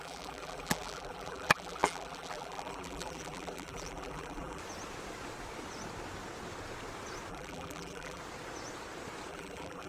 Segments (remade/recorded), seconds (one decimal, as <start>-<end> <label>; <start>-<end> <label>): 0.0-4.6 remade; 4.6-7.3 recorded; 7.3-8.2 remade; 8.2-9.3 recorded; 9.3-9.9 remade